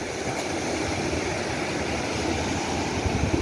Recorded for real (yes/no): yes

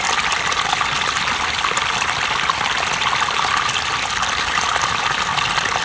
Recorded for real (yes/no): yes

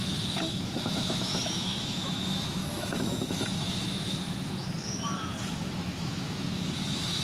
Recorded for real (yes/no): no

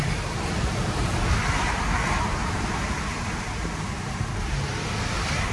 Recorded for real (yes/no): yes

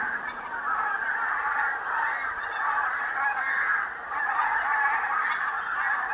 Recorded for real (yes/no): yes